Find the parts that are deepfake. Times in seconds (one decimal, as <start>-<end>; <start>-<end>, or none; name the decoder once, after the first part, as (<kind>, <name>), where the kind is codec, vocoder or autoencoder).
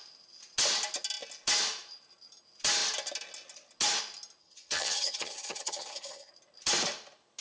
4.4-6.3 (vocoder, HiFi-GAN)